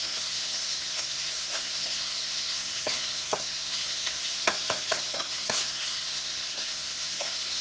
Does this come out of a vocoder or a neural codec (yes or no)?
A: yes